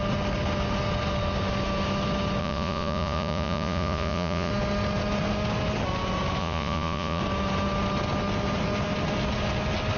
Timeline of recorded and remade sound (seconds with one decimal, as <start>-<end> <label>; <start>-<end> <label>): 0.0-2.4 recorded; 2.4-4.5 remade; 4.5-6.4 recorded; 6.4-7.2 remade; 7.2-10.0 recorded